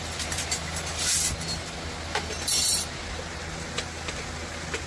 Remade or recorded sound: recorded